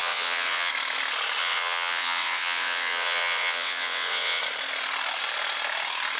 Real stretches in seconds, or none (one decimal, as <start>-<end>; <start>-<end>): 0.7-1.4; 4.4-6.2